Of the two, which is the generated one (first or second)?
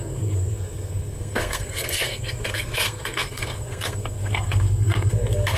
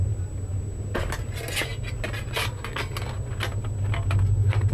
first